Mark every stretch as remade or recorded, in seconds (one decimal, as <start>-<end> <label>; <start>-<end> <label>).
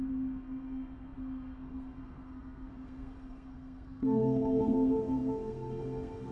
0.0-6.3 remade